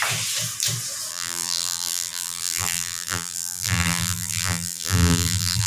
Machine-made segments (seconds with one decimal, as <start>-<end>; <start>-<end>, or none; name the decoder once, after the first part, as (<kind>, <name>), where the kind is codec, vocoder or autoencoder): 1.1-5.7 (vocoder, BigVGAN v2)